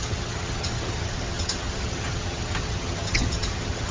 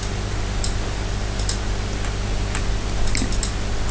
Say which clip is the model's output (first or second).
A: first